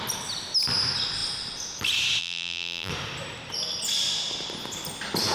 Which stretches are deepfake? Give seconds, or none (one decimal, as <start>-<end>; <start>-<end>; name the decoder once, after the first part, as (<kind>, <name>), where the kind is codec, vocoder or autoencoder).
2.2-2.9 (vocoder, BigVGAN v2)